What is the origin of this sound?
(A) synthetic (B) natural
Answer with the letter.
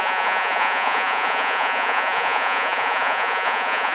A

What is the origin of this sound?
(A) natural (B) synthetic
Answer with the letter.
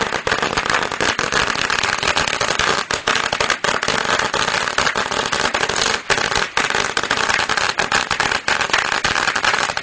A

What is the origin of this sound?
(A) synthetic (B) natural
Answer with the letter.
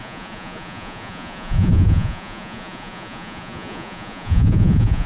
A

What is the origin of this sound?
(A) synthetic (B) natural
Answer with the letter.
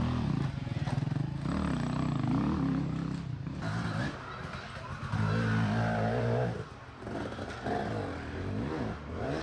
B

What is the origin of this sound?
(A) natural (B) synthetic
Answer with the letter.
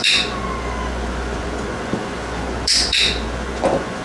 B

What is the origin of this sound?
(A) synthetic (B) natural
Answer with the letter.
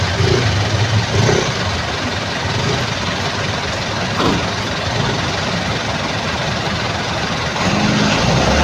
B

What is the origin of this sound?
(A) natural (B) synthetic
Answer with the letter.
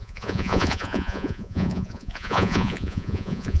B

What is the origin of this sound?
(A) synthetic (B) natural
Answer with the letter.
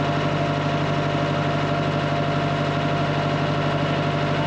B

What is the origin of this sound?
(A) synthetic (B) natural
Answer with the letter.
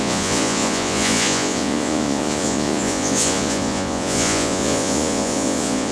A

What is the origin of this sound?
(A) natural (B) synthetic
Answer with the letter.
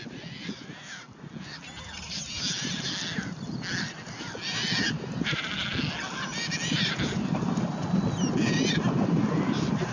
A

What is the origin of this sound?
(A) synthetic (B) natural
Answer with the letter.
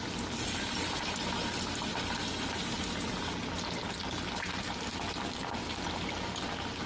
B